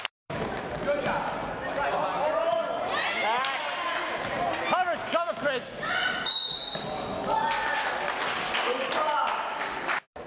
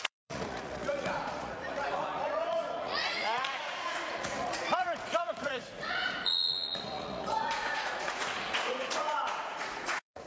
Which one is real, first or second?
first